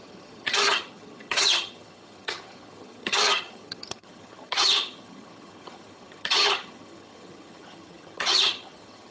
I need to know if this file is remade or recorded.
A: remade